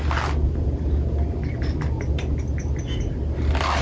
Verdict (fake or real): real